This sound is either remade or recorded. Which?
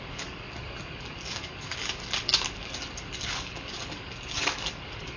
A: remade